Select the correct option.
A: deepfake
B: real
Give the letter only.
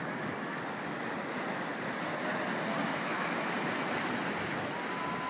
B